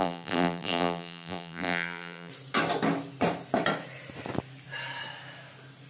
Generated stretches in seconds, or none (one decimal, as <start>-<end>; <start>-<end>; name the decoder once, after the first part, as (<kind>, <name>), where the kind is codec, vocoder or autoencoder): 0.0-2.3 (vocoder, BigVGAN v2)